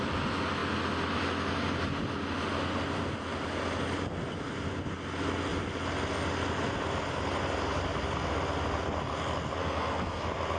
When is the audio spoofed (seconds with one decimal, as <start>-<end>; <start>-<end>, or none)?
9.6-10.2